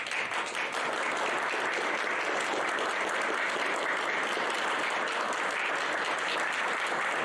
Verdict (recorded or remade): recorded